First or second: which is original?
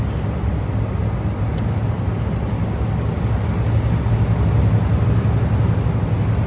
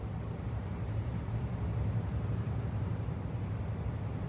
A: first